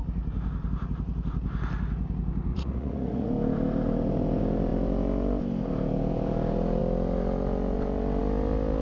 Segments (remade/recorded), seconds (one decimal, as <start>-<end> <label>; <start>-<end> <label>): 0.0-2.5 recorded; 2.5-3.3 remade; 3.3-8.8 recorded